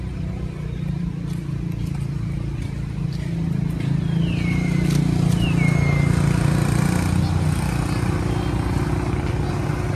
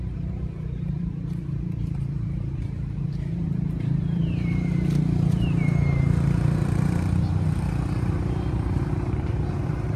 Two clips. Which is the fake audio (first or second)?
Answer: second